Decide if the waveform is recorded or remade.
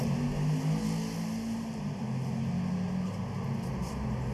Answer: recorded